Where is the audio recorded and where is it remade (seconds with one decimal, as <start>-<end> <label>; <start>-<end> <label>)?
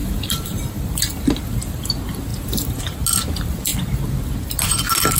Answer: 0.0-1.9 remade; 1.9-2.3 recorded; 2.3-2.8 remade; 2.8-5.2 recorded